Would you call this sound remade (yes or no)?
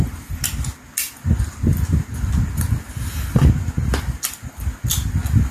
no